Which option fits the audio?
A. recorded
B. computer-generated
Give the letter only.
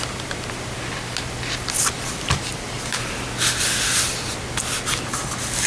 A